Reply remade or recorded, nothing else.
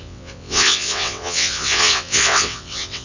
remade